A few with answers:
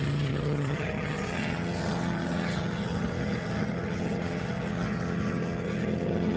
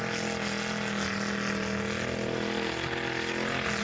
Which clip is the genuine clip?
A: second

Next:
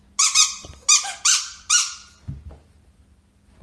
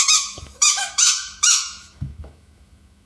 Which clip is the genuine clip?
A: first